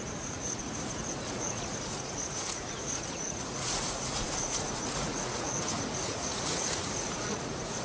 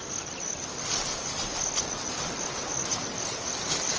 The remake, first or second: first